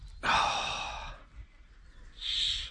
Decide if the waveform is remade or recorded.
recorded